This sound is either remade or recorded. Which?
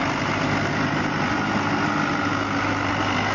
recorded